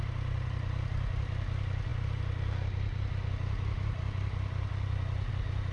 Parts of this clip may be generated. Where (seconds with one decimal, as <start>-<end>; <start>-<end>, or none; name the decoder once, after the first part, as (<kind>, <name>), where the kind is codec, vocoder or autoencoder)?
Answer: none